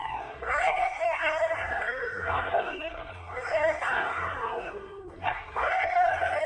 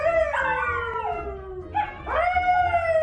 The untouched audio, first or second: second